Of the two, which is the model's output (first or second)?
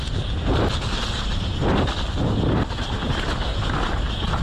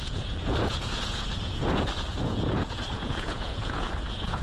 second